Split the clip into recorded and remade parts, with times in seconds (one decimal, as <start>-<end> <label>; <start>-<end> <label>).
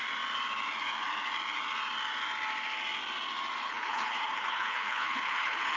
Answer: 0.0-3.6 recorded; 3.6-5.8 remade